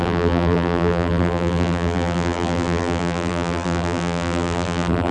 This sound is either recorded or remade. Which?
remade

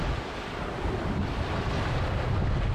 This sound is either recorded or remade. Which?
remade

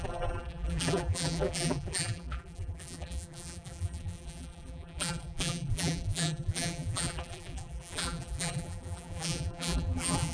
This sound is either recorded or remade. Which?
remade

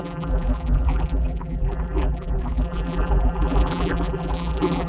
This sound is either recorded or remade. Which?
remade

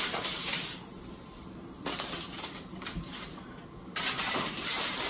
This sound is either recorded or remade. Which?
remade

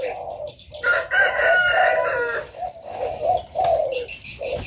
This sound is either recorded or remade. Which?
recorded